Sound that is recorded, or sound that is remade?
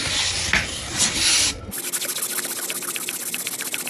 recorded